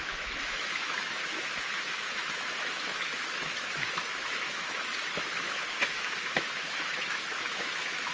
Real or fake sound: fake